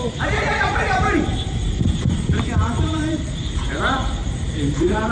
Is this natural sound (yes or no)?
no